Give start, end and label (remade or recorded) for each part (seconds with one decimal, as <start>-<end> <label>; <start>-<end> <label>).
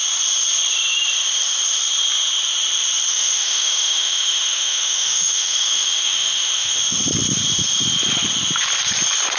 0.0-3.1 recorded; 3.1-6.8 remade; 6.8-9.4 recorded